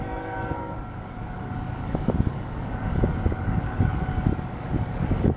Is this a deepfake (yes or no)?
yes